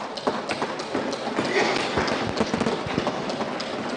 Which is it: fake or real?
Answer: real